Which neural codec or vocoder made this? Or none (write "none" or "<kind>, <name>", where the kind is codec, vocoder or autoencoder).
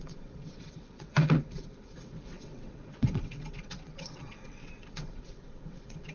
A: vocoder, WaveNeXt